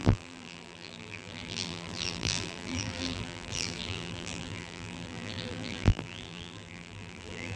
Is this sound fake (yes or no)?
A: yes